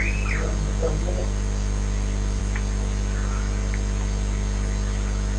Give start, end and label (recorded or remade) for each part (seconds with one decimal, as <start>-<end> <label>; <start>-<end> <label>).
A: 0.0-5.4 recorded